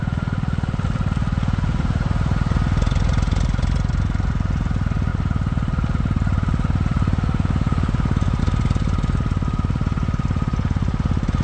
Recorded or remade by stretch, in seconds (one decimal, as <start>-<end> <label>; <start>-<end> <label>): 0.0-11.4 recorded